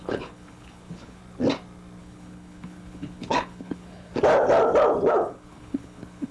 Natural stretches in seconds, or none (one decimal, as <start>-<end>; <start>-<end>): 1.2-2.0; 4.1-5.1